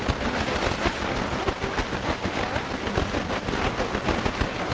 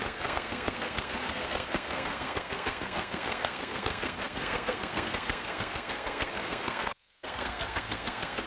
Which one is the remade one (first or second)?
second